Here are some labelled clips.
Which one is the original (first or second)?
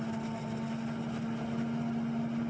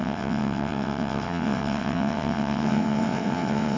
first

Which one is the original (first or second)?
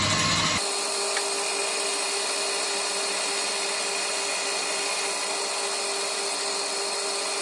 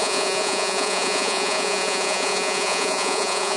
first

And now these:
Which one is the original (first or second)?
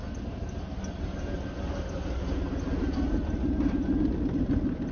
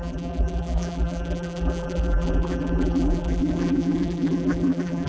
first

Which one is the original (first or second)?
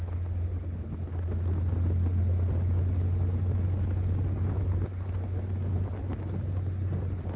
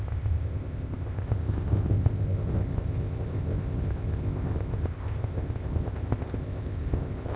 first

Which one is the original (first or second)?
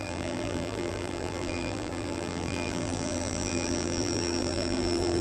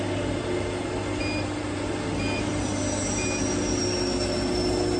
second